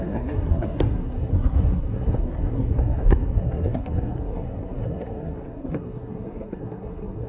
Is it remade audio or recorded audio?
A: remade